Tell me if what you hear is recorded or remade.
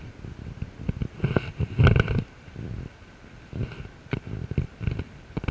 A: recorded